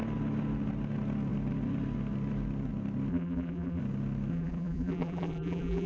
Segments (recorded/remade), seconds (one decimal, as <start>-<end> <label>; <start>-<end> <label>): 0.0-3.1 recorded; 3.1-3.8 remade; 3.8-4.3 recorded; 4.3-5.9 remade